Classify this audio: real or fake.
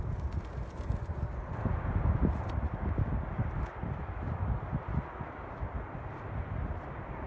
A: real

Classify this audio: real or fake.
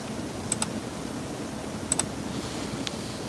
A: real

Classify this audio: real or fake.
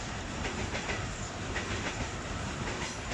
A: real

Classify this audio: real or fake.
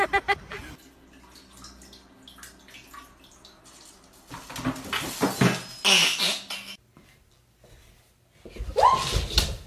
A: real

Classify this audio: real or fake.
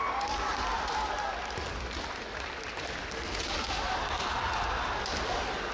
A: real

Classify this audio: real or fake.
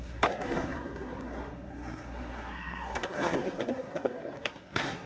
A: fake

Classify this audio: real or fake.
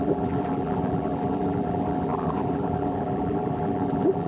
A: fake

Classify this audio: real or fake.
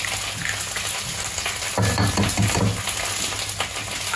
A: real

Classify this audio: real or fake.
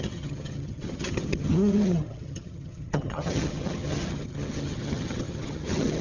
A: fake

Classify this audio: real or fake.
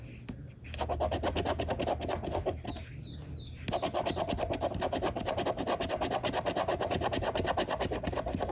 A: real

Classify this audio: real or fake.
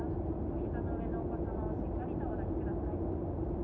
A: real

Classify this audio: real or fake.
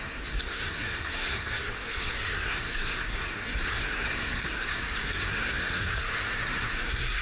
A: fake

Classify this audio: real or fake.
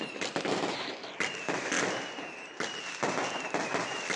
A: fake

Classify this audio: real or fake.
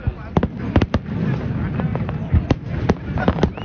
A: real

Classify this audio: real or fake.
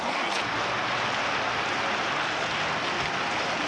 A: real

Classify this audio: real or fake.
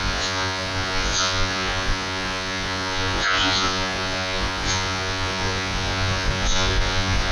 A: fake